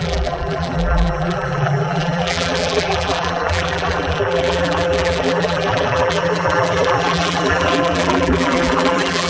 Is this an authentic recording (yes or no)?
no